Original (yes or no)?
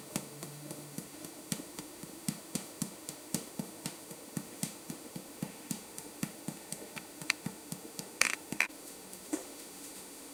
no